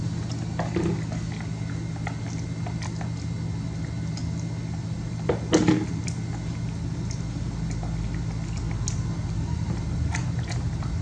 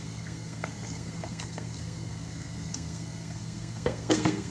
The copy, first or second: second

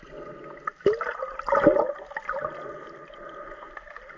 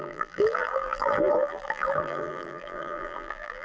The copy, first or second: second